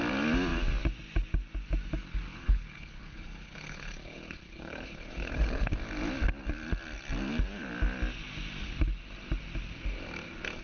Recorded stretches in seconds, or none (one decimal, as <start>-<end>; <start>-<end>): 0.0-2.3; 5.7-10.6